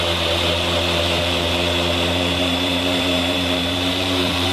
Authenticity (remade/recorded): remade